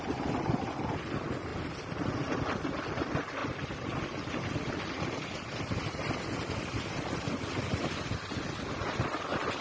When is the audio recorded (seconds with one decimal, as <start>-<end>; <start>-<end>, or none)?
0.0-9.6